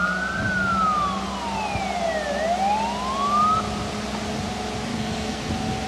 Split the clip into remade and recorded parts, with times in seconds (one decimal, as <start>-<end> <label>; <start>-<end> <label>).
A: 0.0-4.9 recorded; 4.9-5.5 remade; 5.5-5.9 recorded